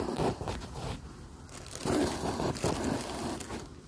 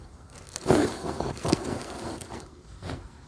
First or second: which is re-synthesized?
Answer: second